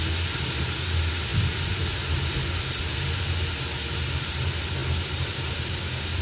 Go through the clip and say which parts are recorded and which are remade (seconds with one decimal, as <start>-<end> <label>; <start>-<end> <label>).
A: 0.0-6.2 recorded